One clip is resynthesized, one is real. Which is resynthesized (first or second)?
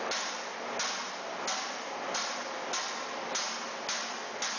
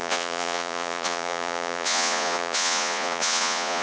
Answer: second